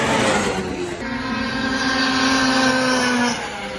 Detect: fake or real real